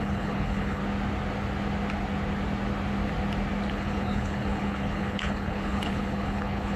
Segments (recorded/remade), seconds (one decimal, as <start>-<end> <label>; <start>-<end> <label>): 0.0-0.8 remade; 0.8-3.7 recorded; 3.7-6.8 remade